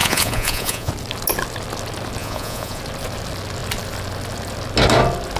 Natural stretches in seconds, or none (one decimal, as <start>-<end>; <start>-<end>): 0.9-2.2; 2.8-5.4